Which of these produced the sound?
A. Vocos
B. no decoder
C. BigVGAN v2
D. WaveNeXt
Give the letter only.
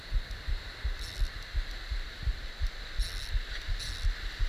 B